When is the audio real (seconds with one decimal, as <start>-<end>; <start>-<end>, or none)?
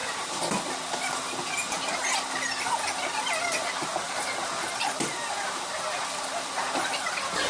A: 0.0-7.5